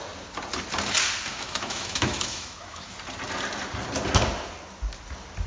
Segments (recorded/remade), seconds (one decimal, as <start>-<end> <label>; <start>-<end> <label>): 0.0-1.3 recorded; 1.3-2.9 remade; 2.9-5.5 recorded